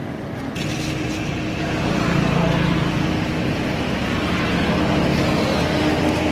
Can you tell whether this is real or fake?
real